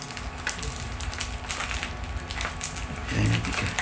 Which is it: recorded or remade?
recorded